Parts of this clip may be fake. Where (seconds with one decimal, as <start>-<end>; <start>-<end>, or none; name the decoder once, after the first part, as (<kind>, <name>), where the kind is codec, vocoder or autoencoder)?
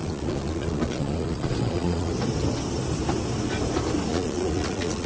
0.0-2.1 (vocoder, Vocos); 4.1-5.1